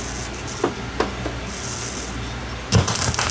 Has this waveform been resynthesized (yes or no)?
no